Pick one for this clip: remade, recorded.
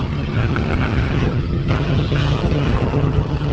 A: remade